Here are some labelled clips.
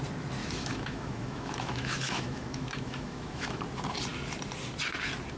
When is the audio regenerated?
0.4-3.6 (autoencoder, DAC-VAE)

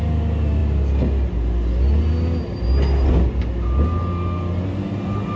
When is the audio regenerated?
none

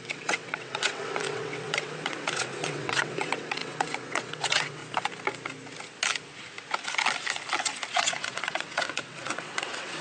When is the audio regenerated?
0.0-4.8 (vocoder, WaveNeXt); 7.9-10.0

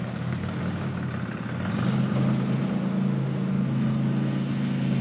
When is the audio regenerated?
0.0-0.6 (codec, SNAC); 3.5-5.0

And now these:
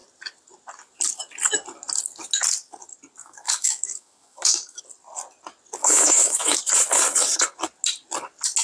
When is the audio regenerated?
3.2-4.8 (autoencoder, DAC-VAE); 5.8-6.6

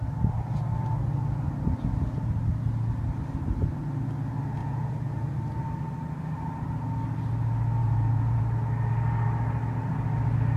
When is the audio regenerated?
4.6-5.2 (vocoder, Vocos); 7.8-8.4

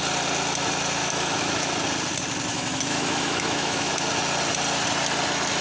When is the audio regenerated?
1.0-1.7 (autoencoder, DAC-VAE); 2.5-3.9